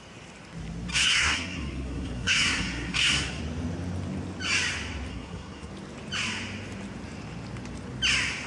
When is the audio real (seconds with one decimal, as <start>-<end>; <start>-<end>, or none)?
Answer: 0.0-0.9; 3.4-5.1; 5.7-8.5